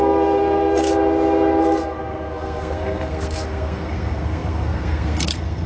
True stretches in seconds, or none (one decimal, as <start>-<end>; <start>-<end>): 0.9-1.6